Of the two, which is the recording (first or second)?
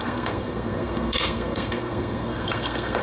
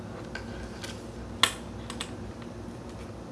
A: second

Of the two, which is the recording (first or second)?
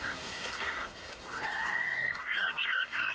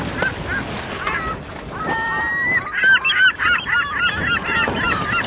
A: second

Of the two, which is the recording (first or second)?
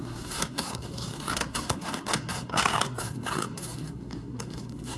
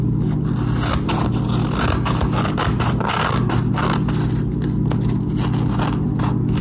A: second